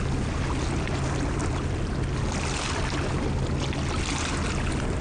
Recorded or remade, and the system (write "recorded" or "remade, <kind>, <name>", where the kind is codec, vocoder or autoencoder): recorded